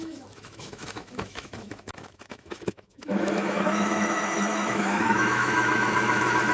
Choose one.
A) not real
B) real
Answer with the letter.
A